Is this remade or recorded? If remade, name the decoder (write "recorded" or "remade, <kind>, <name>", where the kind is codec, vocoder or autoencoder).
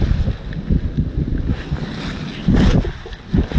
recorded